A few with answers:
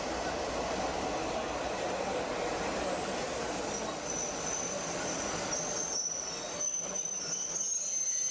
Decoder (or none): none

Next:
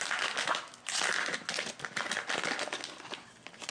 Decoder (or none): none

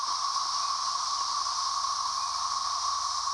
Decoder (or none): none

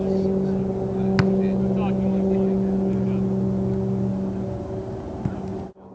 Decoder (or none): none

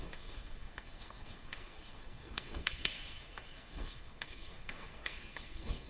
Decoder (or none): codec, SNAC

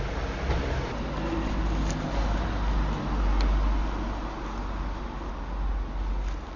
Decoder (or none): none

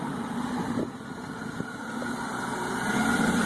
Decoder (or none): vocoder, BigVGAN v2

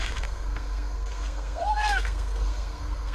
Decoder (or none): codec, SNAC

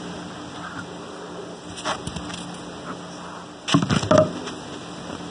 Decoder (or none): none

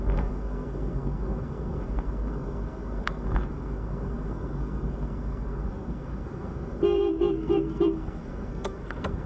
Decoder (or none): codec, SNAC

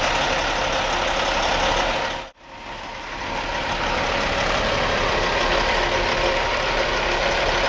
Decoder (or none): none